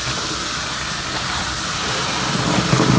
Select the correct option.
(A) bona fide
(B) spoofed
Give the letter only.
A